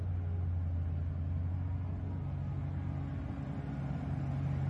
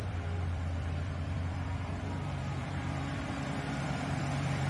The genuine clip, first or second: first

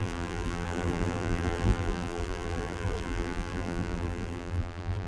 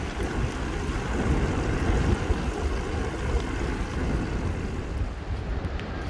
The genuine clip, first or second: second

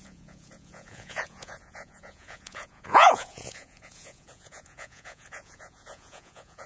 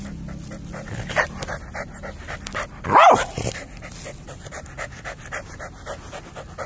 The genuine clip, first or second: second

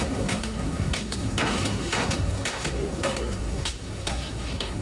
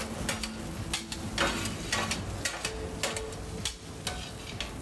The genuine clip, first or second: second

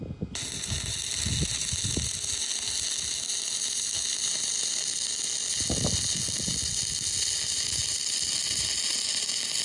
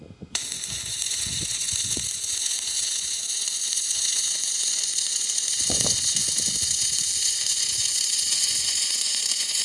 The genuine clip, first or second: first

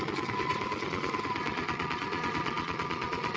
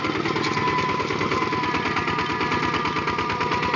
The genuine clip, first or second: second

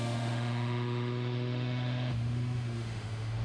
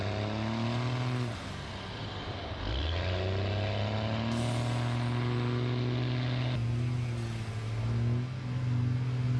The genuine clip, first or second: second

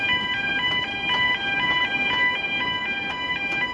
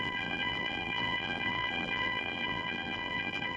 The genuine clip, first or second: first